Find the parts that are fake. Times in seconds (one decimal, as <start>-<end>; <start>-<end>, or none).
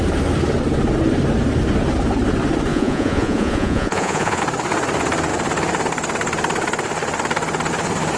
2.7-4.4